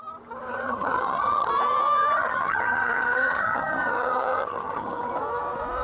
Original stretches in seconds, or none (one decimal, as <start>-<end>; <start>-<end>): 0.0-0.5; 1.5-2.2; 5.1-5.8